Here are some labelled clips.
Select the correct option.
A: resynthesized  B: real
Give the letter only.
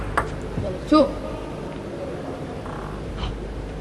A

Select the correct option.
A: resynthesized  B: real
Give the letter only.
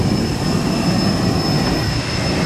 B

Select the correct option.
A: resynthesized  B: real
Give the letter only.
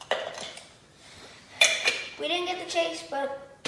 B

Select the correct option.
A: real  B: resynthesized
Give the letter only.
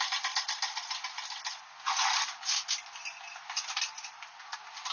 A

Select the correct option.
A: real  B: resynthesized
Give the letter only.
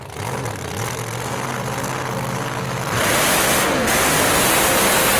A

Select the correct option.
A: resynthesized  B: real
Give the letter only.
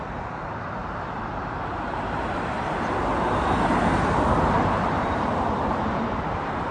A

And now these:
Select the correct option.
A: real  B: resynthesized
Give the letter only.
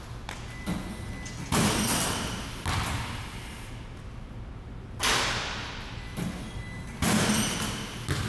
A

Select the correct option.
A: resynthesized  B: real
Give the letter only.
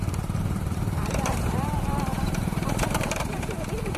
A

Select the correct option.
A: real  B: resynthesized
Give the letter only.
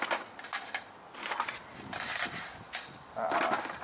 B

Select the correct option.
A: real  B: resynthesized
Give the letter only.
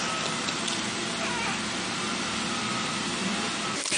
A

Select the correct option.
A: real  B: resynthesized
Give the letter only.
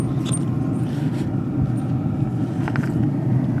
A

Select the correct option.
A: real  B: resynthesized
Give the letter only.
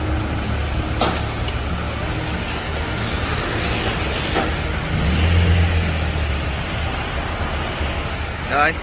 A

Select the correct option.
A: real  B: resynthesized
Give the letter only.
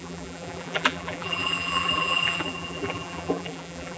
B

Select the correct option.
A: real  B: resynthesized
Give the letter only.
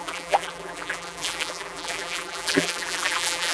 B